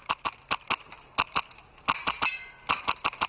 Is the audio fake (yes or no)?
no